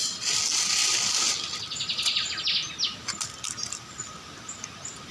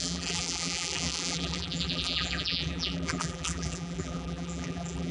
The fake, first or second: second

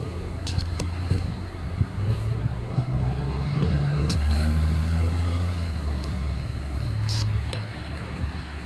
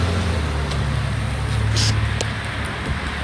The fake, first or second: first